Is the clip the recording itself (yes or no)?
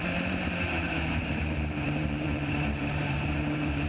no